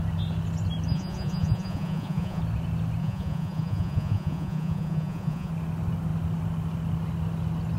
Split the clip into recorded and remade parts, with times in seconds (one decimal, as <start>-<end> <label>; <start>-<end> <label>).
0.0-0.9 recorded; 0.9-2.4 remade; 2.4-3.0 recorded; 3.0-5.5 remade; 5.5-7.8 recorded